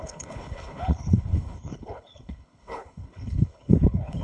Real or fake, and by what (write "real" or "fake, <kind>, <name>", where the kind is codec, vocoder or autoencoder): fake, codec, HILCodec